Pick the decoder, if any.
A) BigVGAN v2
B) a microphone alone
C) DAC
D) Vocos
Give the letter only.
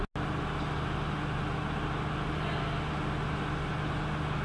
B